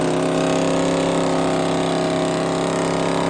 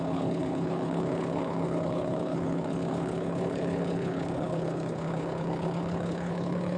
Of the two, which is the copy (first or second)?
second